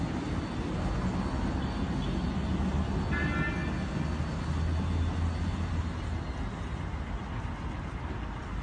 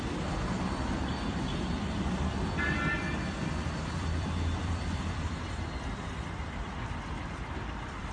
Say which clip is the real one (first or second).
first